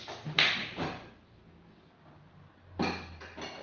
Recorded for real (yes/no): yes